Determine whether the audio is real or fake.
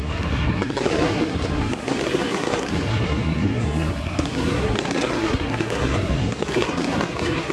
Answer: fake